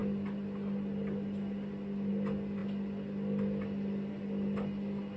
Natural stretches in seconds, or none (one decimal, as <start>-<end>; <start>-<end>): 0.0-5.2